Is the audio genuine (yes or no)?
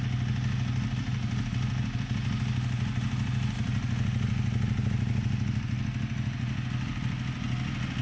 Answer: yes